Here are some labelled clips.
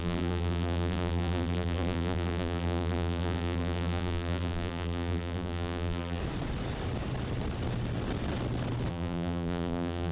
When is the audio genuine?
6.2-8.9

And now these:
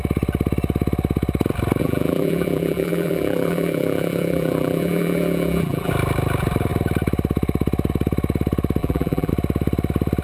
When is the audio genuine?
0.0-1.8; 5.9-8.8; 9.3-10.2

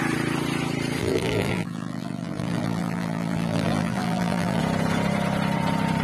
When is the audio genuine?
0.0-1.0; 4.6-6.0

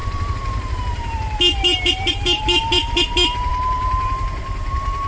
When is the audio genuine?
none